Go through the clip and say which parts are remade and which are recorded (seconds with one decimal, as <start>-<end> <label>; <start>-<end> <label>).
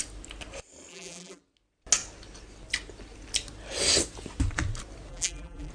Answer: 0.0-0.9 recorded; 0.9-1.4 remade; 1.4-5.1 recorded; 5.1-5.7 remade